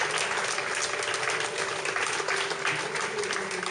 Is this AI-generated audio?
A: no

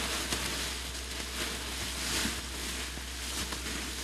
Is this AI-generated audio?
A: no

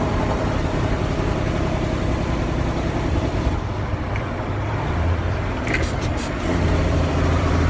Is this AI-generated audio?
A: yes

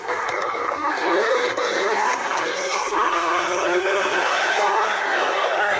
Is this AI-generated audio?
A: yes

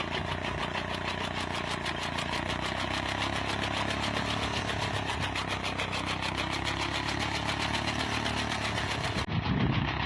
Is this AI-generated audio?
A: no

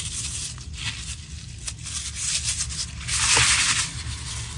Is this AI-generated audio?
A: no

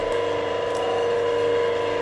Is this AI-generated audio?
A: no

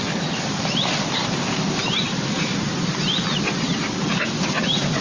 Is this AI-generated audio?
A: no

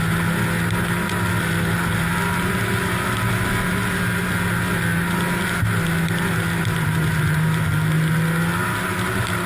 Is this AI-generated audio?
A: no